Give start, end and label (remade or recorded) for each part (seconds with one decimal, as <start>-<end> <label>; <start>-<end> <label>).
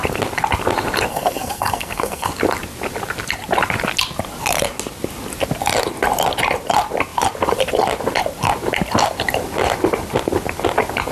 0.0-1.1 recorded; 1.1-2.3 remade; 2.3-11.1 recorded